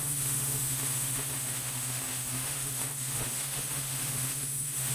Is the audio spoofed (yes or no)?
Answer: yes